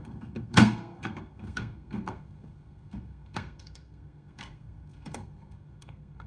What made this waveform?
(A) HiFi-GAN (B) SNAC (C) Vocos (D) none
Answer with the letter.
B